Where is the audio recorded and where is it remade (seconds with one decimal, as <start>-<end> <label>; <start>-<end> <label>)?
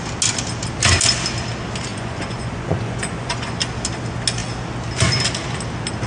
0.0-1.9 recorded; 1.9-3.6 remade; 3.6-6.1 recorded